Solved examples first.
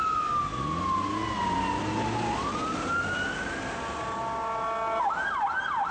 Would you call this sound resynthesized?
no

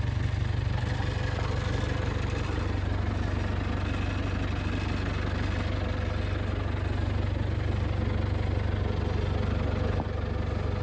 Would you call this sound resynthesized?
no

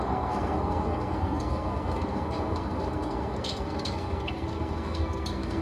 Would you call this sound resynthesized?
yes